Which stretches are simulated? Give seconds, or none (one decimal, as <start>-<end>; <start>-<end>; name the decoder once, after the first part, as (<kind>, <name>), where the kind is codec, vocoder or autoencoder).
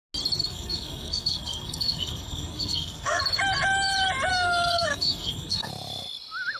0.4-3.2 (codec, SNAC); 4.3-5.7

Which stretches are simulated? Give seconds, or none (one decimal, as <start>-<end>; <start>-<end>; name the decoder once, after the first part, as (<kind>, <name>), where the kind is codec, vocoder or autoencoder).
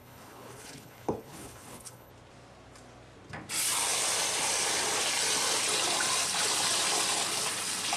0.0-2.1 (codec, HILCodec)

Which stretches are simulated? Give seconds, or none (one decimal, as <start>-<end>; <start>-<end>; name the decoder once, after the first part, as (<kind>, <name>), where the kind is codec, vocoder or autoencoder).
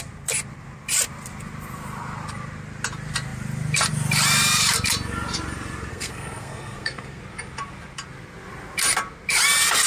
5.9-7.2 (codec, SNAC)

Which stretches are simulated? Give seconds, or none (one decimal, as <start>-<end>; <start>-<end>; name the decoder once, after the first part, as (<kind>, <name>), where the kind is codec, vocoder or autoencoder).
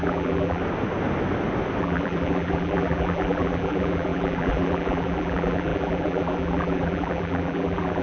0.0-0.6 (vocoder, BigVGAN v2); 1.8-8.0